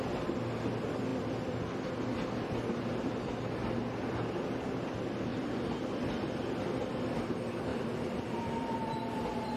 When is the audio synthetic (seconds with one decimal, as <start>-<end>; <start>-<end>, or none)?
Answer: 1.1-1.9; 7.7-8.3